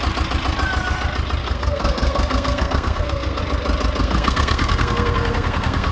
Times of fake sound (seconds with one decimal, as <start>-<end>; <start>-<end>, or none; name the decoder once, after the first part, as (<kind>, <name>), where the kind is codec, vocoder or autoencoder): 1.4-3.4 (codec, SNAC); 4.0-5.9